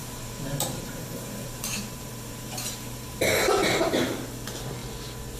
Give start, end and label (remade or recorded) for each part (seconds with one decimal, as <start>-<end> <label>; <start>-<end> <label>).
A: 0.0-3.2 remade; 3.2-3.6 recorded; 3.6-4.2 remade; 4.2-5.4 recorded